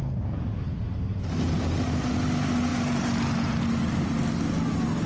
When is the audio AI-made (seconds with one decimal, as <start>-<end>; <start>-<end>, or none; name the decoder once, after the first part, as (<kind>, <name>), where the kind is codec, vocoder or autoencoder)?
none

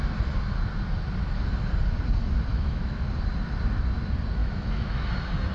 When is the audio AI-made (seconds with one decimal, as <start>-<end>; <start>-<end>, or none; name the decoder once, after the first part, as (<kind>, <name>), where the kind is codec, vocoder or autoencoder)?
2.5-3.0 (autoencoder, DAC-VAE); 4.4-5.1

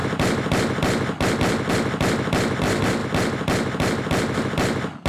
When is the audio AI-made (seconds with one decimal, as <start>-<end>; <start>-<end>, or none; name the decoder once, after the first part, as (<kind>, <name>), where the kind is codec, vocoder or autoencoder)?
none

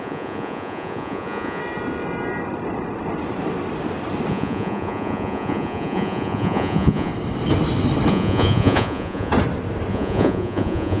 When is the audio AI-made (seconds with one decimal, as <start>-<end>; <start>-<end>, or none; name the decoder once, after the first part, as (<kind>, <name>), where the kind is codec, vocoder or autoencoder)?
0.0-1.6 (vocoder, Vocos); 4.3-7.1; 8.1-9.3; 9.9-11.0

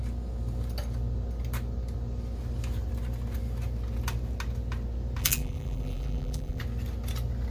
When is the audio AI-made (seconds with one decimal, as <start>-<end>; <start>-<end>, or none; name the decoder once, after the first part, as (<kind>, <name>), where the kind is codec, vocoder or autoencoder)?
5.2-6.6 (vocoder, BigVGAN v2)

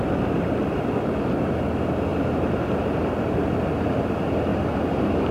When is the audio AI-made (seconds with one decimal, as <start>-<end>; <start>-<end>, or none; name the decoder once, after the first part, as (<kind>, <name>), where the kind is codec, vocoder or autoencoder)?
2.1-2.9 (vocoder, BigVGAN v2); 4.5-5.3